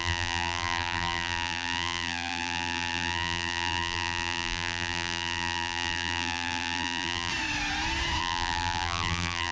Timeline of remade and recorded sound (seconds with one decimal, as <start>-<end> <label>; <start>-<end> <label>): 0.0-7.3 remade; 7.3-8.2 recorded; 8.2-9.5 remade